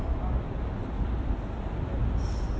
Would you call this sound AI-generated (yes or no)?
no